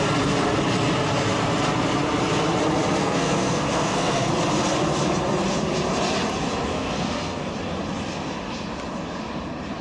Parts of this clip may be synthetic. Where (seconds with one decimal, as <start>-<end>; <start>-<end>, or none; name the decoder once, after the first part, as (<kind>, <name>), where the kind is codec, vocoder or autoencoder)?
3.0-4.3 (codec, SNAC); 6.7-7.5